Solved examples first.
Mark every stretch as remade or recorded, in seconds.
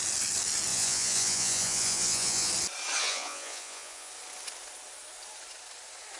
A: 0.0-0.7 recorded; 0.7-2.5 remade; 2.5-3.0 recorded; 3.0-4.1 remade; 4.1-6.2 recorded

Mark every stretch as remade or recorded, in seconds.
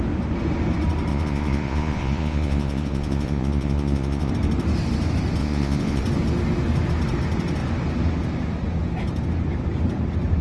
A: 0.0-1.1 recorded; 1.1-4.3 remade; 4.3-5.4 recorded; 5.4-6.0 remade; 6.0-10.4 recorded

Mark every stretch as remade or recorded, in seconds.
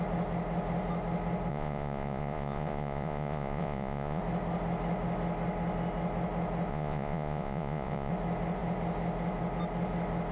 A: 0.0-1.5 recorded; 1.5-4.2 remade; 4.2-6.7 recorded; 6.7-8.1 remade; 8.1-10.3 recorded